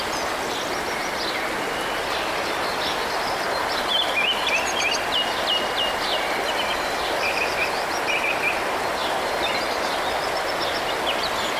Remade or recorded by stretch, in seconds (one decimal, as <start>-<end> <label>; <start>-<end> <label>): 0.0-11.6 recorded